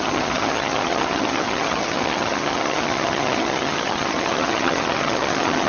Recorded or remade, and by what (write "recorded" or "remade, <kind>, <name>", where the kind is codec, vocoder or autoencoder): remade, vocoder, HiFi-GAN